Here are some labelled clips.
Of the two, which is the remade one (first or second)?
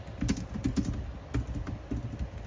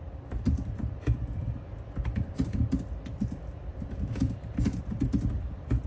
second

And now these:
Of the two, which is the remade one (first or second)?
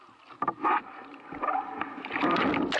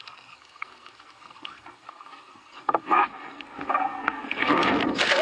second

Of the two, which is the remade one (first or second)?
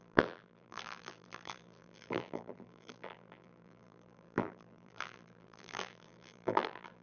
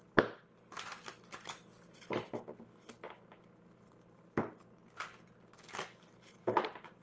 first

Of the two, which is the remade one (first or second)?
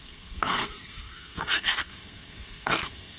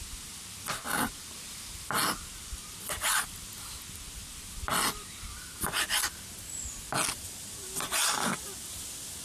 first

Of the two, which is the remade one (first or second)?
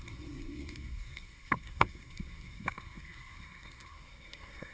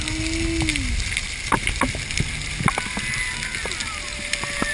first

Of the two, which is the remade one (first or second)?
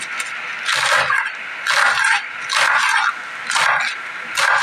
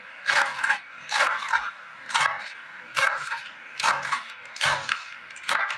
second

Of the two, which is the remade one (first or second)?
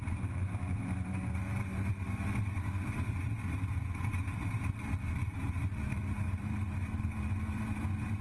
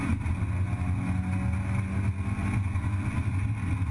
first